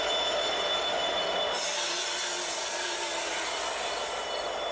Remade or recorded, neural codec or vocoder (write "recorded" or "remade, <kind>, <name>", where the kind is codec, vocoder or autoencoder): recorded